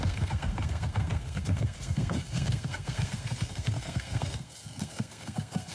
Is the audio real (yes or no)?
no